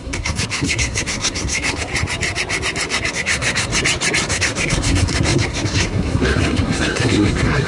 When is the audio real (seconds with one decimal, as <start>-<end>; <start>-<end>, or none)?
1.9-3.1; 3.7-4.3